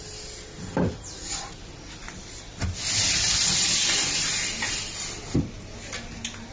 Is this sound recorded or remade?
recorded